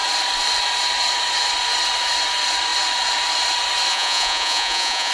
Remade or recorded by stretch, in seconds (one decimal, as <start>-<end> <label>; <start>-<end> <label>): 0.0-3.9 recorded; 3.9-5.1 remade